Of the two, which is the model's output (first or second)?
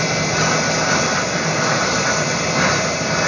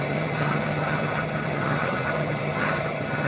second